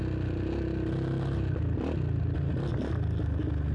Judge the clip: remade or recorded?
recorded